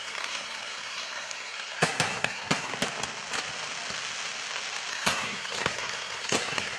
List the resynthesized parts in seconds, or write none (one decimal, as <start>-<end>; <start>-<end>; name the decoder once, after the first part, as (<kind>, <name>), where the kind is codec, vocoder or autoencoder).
0.0-2.7 (codec, SNAC); 4.9-6.8